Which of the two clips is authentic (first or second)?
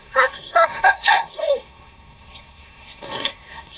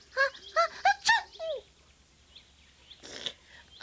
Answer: second